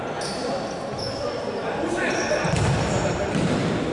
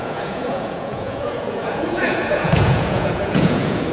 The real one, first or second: first